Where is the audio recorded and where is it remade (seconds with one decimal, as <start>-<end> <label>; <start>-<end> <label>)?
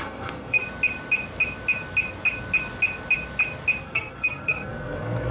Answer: 0.0-0.6 remade; 0.6-3.8 recorded; 3.8-5.3 remade